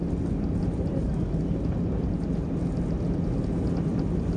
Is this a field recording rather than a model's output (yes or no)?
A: yes